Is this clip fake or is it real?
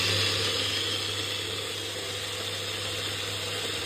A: real